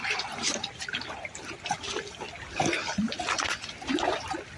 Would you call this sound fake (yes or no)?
no